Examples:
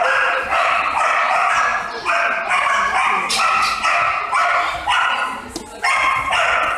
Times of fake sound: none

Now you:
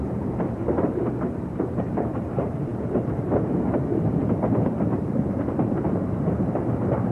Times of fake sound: 0.0-7.1 (vocoder, BigVGAN v2)